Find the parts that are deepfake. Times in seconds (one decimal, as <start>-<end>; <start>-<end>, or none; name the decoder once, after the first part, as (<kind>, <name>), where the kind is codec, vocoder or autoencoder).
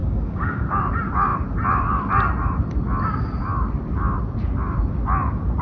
0.0-0.8 (codec, DAC)